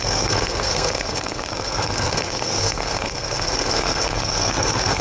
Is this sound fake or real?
fake